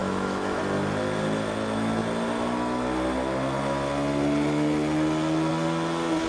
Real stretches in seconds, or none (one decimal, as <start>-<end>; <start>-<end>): 0.6-6.3